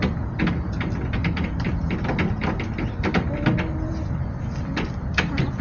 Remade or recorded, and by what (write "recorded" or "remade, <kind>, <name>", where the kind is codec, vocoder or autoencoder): recorded